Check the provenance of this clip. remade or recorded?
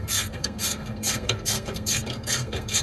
remade